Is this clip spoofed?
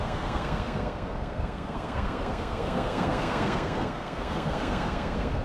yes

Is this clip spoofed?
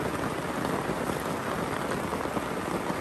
no